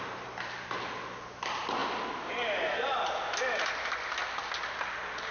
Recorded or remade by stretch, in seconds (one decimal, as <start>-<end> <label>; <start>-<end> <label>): 0.0-5.3 recorded